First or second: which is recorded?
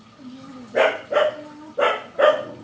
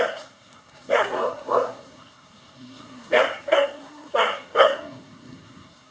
first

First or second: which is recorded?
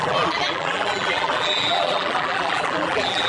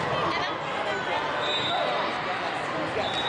second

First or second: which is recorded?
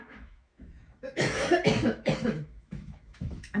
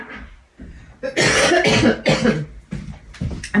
second